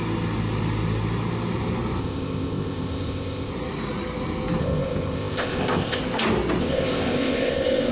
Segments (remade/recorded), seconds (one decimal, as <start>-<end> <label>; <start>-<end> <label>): 0.0-2.0 recorded; 2.0-3.5 remade; 3.5-4.6 recorded; 4.6-6.0 remade; 6.0-6.6 recorded; 6.6-7.9 remade